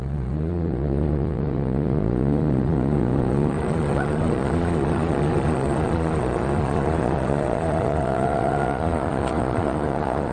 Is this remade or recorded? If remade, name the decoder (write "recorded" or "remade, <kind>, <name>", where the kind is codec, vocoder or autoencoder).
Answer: remade, vocoder, Vocos